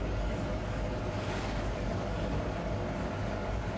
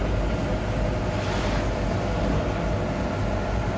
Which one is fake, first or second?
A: first